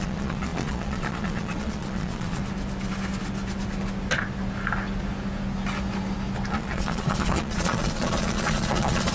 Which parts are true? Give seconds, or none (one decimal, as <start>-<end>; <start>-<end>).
2.4-6.5